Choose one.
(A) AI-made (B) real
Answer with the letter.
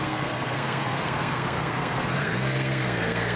A